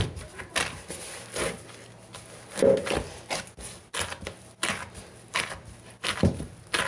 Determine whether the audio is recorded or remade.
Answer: recorded